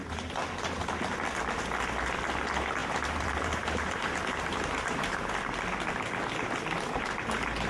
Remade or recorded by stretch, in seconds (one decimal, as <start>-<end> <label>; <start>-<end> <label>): 0.0-2.8 recorded; 2.8-5.3 remade; 5.3-7.7 recorded